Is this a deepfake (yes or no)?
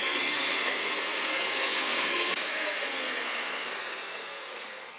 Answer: yes